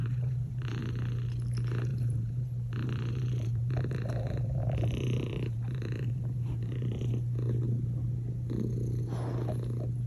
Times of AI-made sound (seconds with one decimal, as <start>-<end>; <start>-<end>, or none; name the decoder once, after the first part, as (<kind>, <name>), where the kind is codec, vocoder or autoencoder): 0.0-0.8 (vocoder, BigVGAN v2); 1.9-7.1